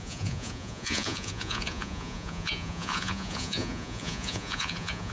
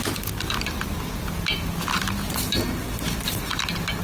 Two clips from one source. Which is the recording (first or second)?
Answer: second